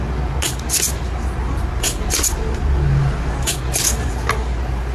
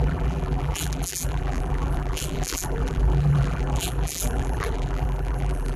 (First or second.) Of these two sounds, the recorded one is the first